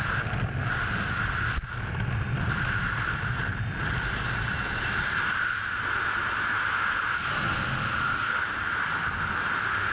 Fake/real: real